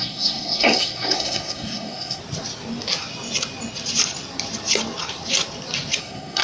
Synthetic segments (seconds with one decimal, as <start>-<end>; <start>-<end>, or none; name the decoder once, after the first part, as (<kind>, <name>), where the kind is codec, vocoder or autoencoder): 0.0-2.2 (codec, SNAC); 6.0-6.4

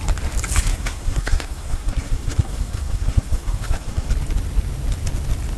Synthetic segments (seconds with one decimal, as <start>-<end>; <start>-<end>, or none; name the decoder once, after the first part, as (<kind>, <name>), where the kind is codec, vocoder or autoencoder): 0.7-4.1 (codec, SNAC)